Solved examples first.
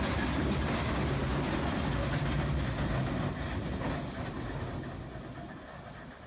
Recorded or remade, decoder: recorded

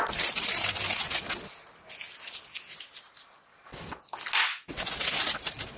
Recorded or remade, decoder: recorded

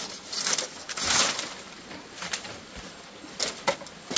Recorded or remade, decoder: recorded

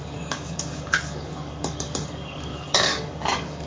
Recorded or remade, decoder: remade, codec, DAC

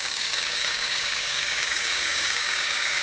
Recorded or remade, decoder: remade, codec, DAC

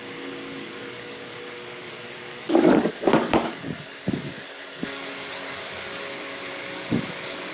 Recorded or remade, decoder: remade, codec, DAC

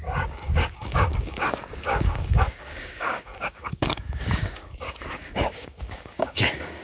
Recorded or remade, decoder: remade, codec, DAC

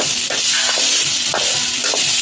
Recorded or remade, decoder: recorded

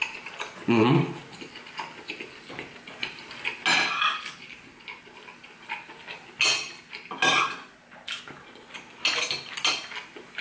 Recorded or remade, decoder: recorded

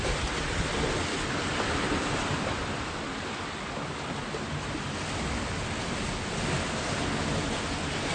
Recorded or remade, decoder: recorded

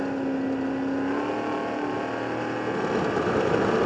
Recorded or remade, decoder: recorded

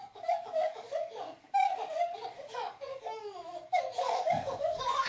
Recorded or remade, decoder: remade, codec, DAC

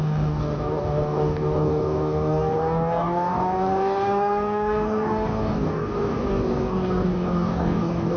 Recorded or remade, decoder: remade, codec, DAC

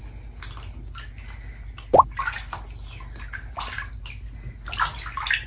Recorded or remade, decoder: recorded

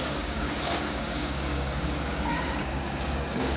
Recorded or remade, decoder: remade, codec, DAC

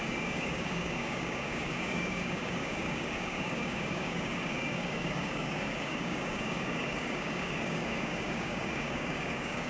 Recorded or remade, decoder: remade, codec, DAC